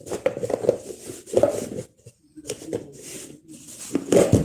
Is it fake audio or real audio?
real